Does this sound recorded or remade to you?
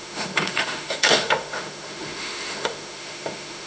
remade